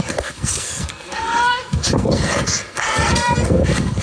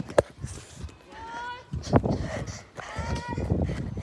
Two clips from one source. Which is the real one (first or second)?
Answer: second